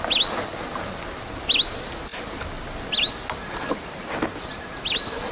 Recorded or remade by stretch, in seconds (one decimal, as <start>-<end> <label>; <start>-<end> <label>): 0.0-5.3 recorded